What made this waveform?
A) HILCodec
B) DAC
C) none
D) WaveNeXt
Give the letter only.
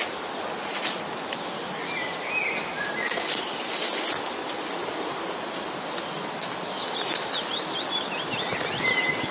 C